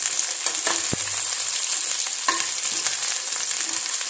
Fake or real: real